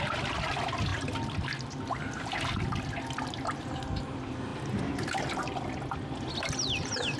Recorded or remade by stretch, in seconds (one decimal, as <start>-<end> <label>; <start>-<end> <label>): 0.0-7.2 recorded